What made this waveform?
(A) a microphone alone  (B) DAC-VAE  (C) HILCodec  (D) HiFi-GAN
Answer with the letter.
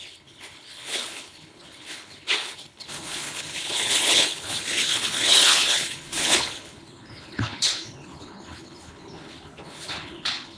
C